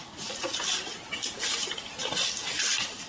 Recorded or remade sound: recorded